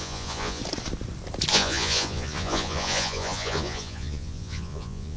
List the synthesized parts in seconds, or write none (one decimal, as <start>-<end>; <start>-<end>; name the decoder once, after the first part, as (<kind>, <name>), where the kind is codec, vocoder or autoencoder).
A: 0.0-0.6 (vocoder, Vocos); 1.5-5.2